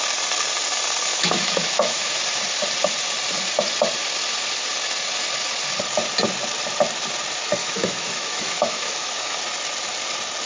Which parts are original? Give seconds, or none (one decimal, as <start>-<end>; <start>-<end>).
0.0-1.1; 2.1-7.6; 9.4-10.5